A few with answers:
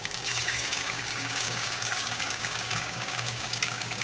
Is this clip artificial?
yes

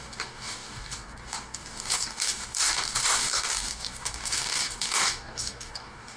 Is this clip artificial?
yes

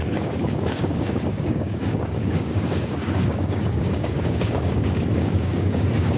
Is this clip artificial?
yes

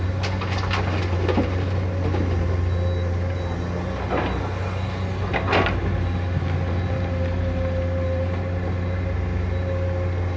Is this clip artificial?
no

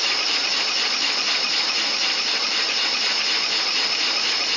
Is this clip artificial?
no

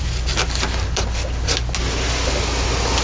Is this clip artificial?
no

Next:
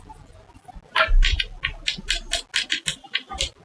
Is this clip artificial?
no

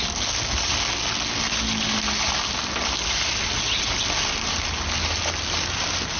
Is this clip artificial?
no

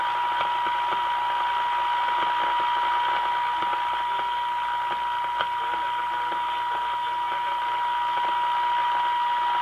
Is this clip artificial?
no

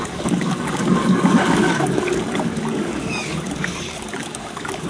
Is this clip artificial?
yes